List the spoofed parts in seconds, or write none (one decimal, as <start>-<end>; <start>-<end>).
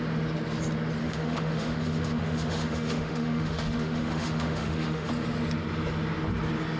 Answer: 1.0-5.1